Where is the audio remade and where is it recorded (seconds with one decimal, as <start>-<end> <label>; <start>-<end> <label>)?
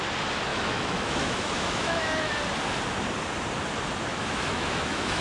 0.0-0.5 recorded; 0.5-2.3 remade; 2.3-4.1 recorded; 4.1-5.2 remade